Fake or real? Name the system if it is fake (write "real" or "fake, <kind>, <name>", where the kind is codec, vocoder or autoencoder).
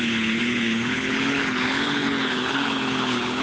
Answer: fake, codec, HILCodec